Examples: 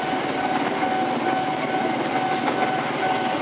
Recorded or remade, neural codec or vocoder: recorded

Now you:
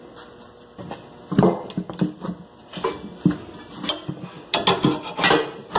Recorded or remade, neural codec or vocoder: recorded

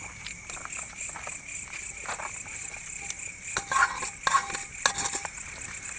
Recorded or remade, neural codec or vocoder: recorded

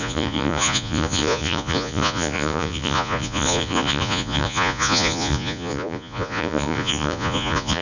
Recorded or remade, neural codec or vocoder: remade, vocoder, Vocos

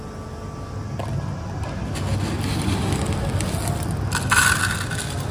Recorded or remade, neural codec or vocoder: recorded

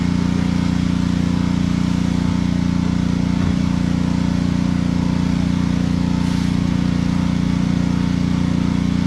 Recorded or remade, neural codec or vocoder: recorded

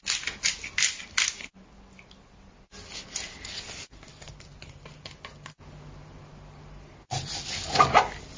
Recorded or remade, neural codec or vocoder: recorded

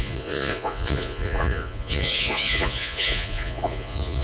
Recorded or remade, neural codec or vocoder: remade, vocoder, Vocos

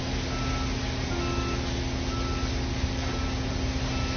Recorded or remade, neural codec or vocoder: recorded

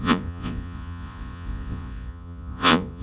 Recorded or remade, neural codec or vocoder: remade, vocoder, Vocos